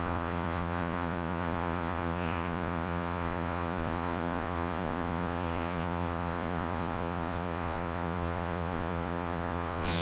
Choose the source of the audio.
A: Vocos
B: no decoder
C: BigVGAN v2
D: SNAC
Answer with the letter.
A